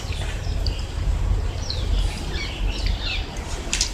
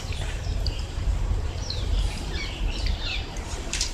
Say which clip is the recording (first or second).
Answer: first